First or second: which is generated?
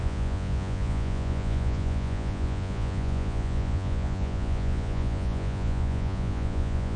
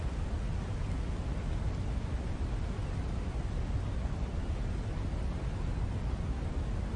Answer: first